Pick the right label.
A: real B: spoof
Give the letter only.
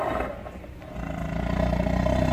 A